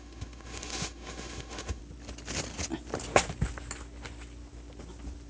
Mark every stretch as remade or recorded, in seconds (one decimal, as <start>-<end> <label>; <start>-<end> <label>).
0.0-1.8 remade; 1.8-5.3 recorded